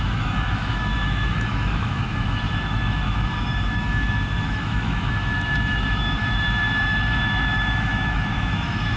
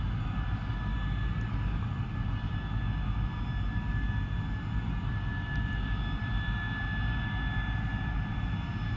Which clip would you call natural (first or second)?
second